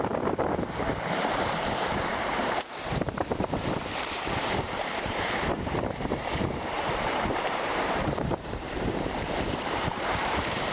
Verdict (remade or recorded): remade